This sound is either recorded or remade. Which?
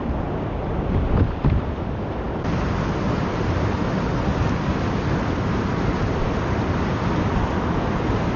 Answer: recorded